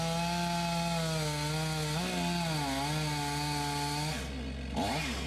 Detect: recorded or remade recorded